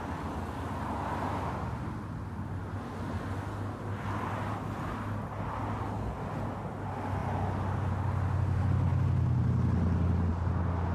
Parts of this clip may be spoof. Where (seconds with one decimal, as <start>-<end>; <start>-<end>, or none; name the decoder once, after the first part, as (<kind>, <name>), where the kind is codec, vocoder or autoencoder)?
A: none